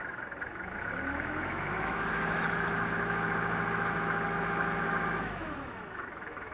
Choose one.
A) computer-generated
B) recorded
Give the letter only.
A